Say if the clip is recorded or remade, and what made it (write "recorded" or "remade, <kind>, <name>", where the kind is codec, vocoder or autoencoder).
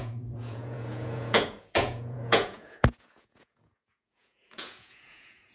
remade, vocoder, Vocos